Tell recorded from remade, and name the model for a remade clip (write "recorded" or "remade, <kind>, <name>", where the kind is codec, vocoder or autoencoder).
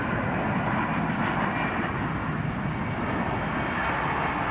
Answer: recorded